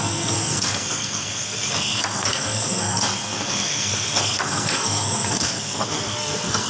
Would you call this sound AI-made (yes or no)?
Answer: yes